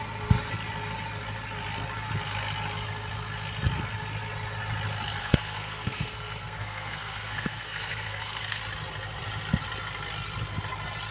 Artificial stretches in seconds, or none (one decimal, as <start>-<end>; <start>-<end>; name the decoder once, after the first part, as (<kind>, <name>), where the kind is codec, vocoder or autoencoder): 5.2-8.6 (codec, SNAC)